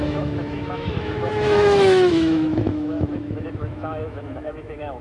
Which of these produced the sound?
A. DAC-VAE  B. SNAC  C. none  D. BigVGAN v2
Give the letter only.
A